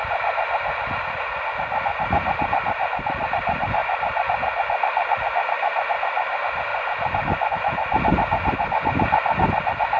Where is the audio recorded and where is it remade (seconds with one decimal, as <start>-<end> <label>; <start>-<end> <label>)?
0.0-10.0 recorded